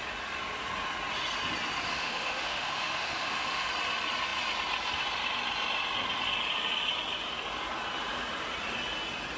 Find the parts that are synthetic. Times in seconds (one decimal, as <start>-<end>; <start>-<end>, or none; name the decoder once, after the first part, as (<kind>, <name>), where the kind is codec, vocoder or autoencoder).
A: 1.9-3.7 (autoencoder, DAC-VAE)